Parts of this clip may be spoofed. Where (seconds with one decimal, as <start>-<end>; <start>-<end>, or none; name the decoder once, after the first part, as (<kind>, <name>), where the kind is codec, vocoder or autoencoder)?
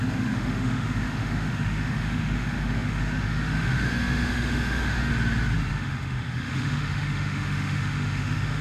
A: 0.0-5.1 (autoencoder, DAC-VAE); 5.7-8.6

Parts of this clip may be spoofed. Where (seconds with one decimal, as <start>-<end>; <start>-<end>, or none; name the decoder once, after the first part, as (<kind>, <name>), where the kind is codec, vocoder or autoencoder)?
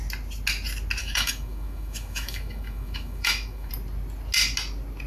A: 1.0-3.7 (autoencoder, DAC-VAE)